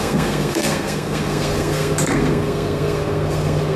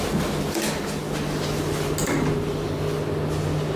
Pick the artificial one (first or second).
first